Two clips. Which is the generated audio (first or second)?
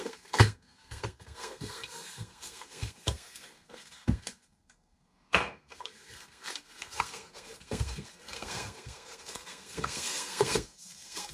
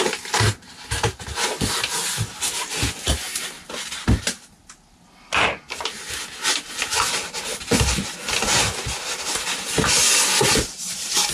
first